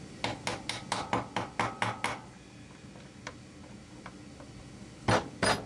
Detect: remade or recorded recorded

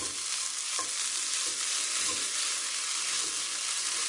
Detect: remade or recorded recorded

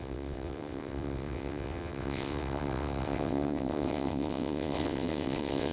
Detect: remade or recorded remade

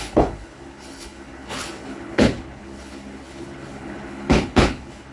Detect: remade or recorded remade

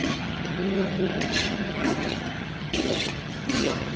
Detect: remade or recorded remade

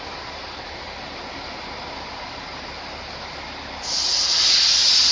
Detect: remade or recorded recorded